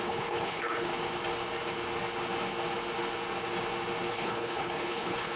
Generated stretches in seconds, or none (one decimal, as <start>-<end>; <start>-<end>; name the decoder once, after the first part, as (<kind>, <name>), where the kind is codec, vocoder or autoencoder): 0.0-0.9 (codec, HILCodec); 4.1-5.4